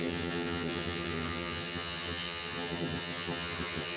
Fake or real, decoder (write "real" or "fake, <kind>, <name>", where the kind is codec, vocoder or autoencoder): fake, vocoder, HiFi-GAN